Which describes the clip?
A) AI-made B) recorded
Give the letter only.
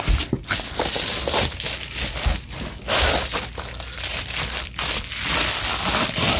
B